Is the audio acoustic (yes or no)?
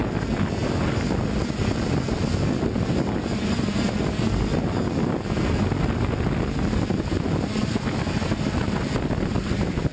yes